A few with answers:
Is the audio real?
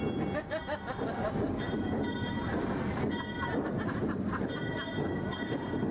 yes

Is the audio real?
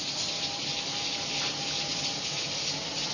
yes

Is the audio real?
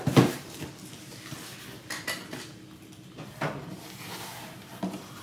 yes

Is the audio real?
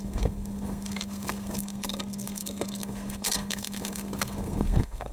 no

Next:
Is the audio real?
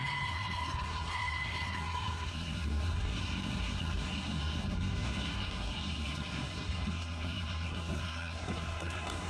no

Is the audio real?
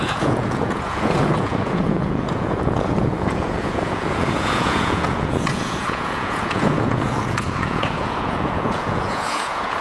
no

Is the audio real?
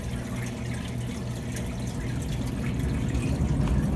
yes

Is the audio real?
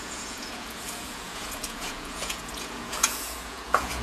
no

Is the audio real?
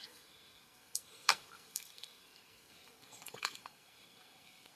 no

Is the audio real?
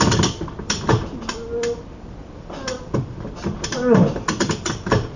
no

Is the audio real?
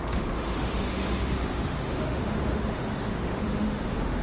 no